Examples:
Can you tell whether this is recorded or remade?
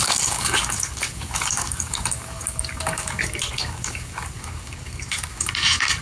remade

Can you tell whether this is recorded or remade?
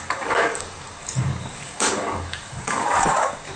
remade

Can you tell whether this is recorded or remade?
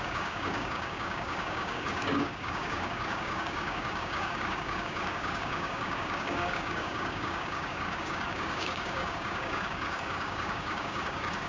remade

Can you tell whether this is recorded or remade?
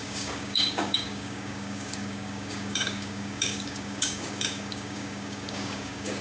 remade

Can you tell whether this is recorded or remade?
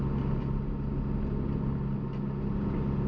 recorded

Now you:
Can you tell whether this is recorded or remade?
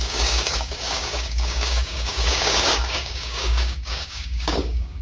remade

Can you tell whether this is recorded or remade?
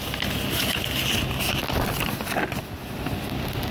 recorded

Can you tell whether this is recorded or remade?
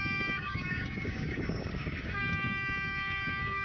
remade